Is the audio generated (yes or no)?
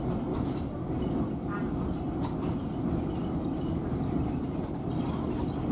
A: no